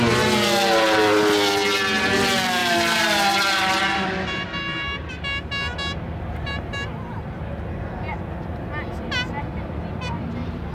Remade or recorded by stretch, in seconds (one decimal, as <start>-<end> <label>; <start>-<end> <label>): 0.0-2.6 recorded; 2.6-5.2 remade; 5.2-9.5 recorded; 9.5-10.7 remade